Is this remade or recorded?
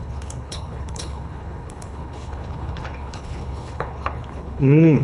remade